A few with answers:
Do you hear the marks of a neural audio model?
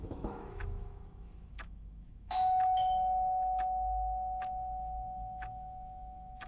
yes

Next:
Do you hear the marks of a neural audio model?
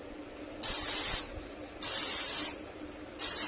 no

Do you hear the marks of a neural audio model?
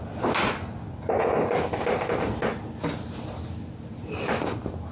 no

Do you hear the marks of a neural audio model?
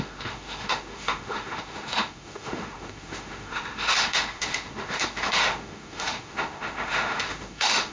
yes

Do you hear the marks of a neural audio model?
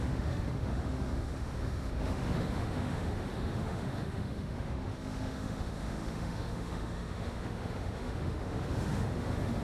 yes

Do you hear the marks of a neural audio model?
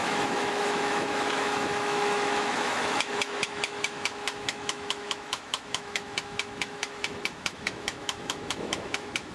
yes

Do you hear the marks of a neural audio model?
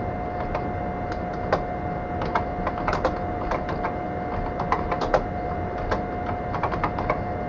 no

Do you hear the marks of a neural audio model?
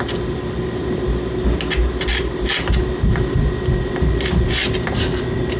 no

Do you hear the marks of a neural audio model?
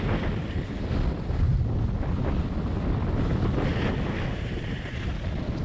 no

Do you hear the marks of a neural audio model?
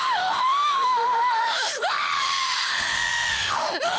yes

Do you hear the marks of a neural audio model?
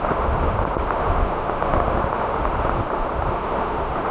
yes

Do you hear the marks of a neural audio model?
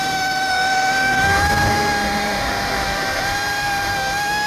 yes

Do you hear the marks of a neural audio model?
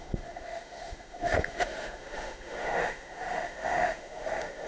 yes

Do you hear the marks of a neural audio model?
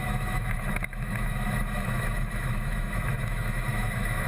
yes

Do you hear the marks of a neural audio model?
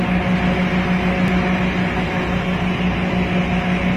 no